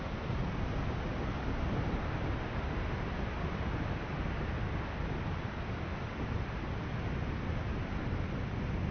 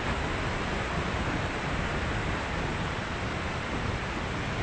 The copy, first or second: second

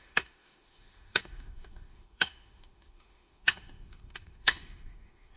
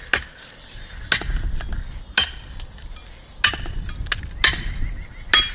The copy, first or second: first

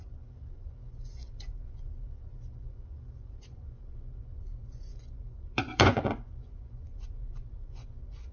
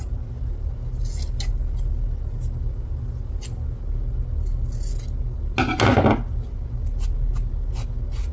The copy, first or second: first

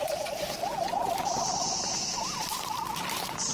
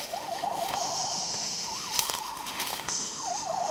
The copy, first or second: second